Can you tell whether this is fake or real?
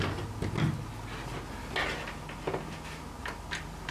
real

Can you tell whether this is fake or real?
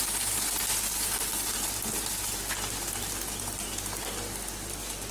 real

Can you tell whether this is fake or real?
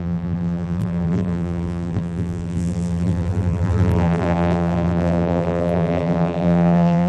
fake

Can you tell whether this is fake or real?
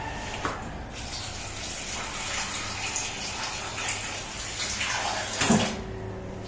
real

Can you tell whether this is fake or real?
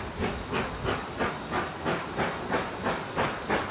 real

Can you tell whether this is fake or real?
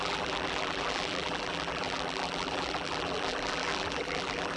fake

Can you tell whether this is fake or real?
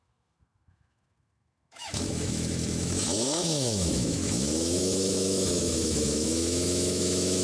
fake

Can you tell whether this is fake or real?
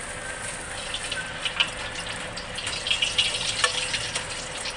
real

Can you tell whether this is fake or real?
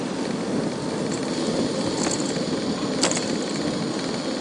real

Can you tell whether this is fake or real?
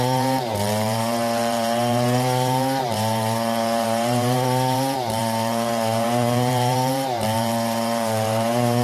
fake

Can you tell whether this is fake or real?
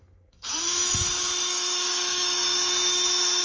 fake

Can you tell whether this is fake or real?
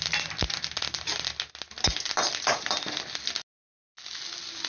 real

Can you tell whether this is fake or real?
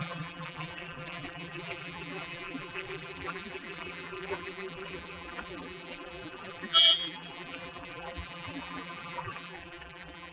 fake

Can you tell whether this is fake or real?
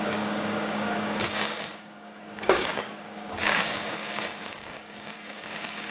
fake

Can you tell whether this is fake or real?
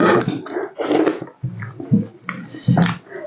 real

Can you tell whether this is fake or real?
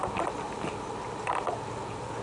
real